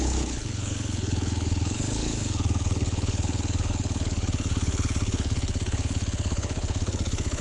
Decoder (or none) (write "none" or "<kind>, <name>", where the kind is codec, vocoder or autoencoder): codec, HILCodec